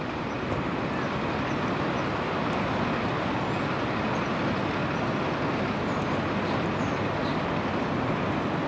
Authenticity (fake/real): real